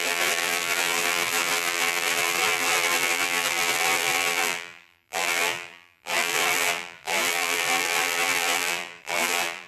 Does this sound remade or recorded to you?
remade